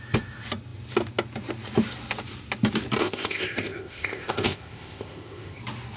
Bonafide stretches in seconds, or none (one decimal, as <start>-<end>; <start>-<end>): 0.0-3.0; 5.6-6.0